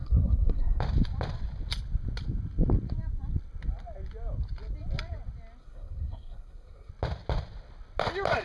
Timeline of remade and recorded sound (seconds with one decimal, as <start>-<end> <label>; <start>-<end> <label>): 0.0-0.8 remade; 0.8-5.6 recorded; 5.6-6.9 remade; 6.9-8.4 recorded